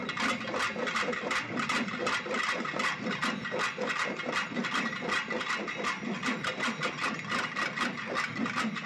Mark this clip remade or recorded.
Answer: recorded